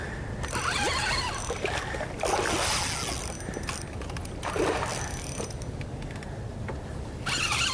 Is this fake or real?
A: real